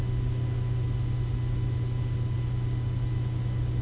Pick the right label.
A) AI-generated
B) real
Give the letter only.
B